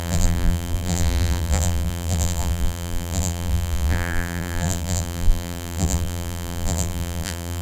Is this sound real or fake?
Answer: fake